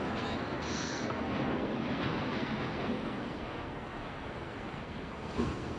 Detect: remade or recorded remade